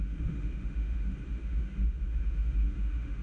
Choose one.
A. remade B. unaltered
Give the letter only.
A